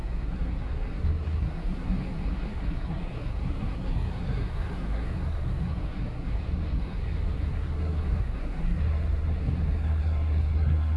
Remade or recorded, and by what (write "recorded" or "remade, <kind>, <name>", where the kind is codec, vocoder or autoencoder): remade, codec, SNAC